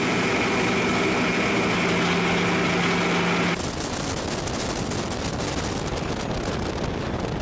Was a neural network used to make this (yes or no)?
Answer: no